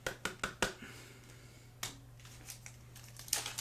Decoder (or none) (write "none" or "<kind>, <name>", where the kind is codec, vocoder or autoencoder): none